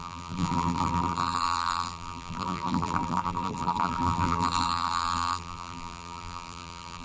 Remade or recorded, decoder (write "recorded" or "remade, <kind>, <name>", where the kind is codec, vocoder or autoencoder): remade, vocoder, BigVGAN v2